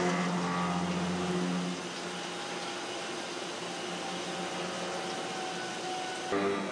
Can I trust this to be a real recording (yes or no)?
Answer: yes